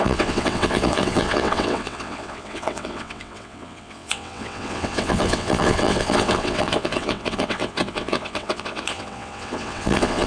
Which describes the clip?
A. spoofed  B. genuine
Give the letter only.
A